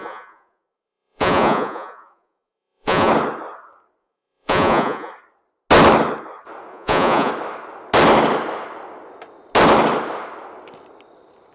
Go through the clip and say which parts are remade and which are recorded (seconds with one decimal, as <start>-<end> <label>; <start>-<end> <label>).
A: 0.0-3.1 remade; 3.1-4.0 recorded; 4.0-5.1 remade; 5.1-6.7 recorded; 6.7-7.3 remade; 7.3-11.5 recorded